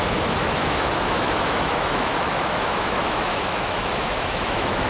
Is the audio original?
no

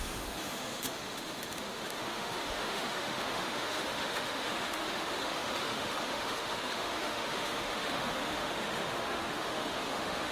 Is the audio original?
no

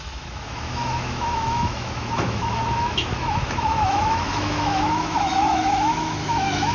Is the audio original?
no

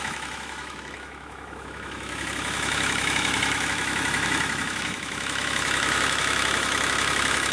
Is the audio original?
no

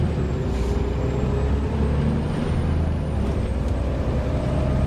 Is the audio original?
yes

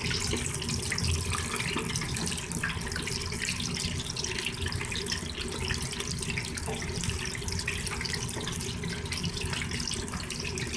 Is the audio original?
yes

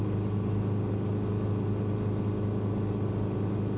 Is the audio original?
yes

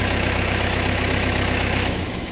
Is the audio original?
no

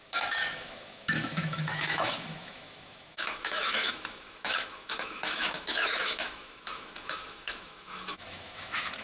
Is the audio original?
no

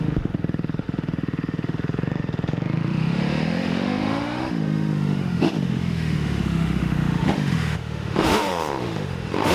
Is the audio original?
no